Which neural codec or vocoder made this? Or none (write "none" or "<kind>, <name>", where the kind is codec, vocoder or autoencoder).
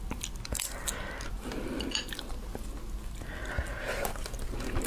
none